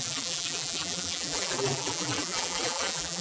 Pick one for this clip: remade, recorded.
remade